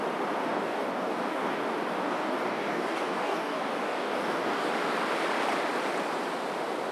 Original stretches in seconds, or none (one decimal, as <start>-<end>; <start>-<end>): 0.0-0.4; 1.6-2.0; 4.7-6.9